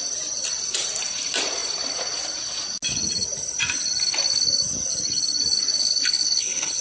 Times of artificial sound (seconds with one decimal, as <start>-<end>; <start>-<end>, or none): 5.8-6.8